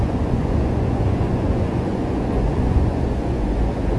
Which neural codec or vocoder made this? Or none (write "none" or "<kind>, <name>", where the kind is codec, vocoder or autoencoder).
vocoder, Vocos